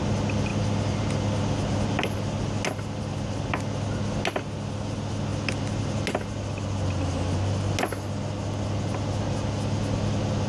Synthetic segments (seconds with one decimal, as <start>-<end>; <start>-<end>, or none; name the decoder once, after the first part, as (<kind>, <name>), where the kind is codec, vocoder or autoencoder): none